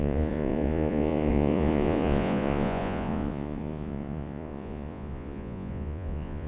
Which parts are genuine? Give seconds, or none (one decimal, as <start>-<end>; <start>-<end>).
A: none